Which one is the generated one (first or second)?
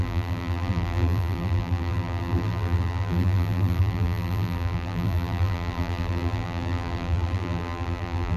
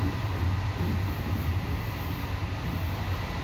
first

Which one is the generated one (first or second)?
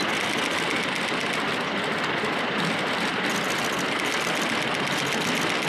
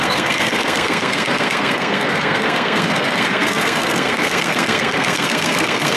second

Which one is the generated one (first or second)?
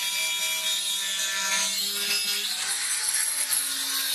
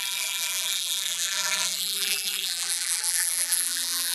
second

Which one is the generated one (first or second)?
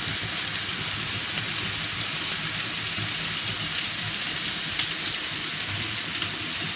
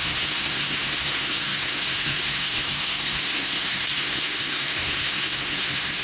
second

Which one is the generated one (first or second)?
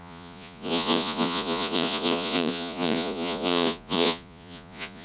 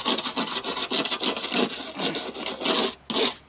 first